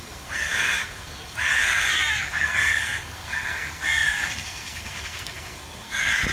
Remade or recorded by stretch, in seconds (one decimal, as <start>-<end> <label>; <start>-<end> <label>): 0.0-6.3 remade